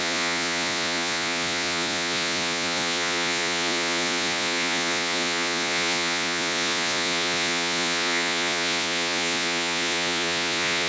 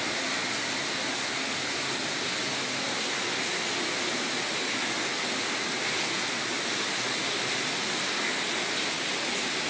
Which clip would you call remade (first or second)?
first